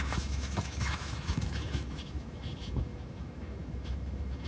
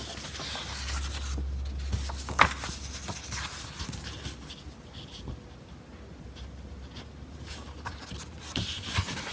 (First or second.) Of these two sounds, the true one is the second